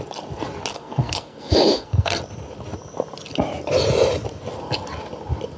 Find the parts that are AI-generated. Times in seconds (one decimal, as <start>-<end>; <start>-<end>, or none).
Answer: 0.7-2.2